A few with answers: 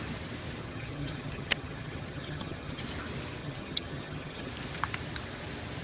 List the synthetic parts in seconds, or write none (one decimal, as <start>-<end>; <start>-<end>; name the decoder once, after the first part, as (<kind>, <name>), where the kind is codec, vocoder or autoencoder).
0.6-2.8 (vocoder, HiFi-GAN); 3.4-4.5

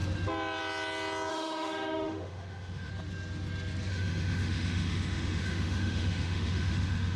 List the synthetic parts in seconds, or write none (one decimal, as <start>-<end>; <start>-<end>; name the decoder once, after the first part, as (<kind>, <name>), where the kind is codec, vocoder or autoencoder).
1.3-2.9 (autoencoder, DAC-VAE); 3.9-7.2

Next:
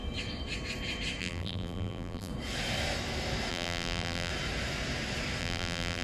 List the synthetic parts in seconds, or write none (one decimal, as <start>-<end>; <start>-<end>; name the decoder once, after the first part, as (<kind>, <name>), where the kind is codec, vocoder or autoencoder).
1.2-2.3 (vocoder, BigVGAN v2); 3.5-4.3; 5.4-6.0

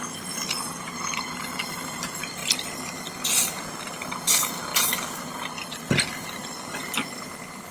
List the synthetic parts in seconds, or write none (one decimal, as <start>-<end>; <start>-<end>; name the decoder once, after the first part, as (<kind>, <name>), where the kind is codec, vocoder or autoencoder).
none